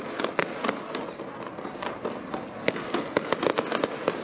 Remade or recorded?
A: recorded